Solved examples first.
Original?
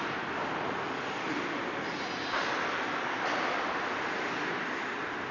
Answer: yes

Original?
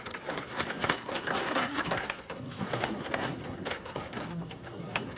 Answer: no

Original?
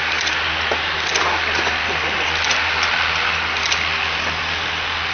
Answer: no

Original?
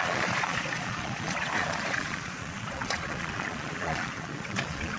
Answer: no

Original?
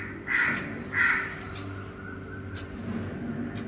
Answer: yes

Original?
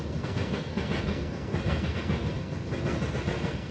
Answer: no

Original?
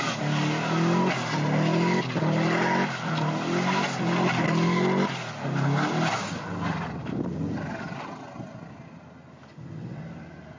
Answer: yes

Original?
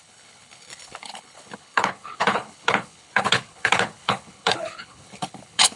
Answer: no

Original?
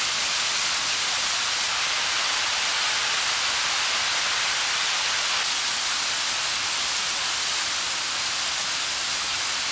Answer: yes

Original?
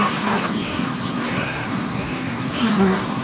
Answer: no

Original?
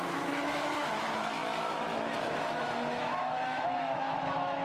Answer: no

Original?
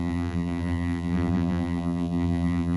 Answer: no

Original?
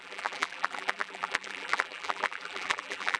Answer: no